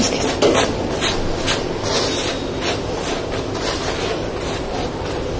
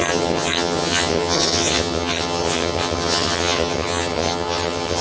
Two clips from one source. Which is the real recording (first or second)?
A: first